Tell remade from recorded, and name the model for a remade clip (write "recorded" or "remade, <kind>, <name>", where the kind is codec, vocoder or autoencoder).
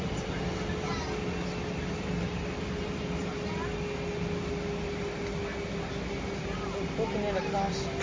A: recorded